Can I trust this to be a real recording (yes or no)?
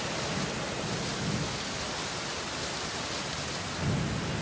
yes